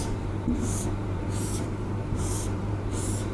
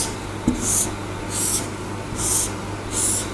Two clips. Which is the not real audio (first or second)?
first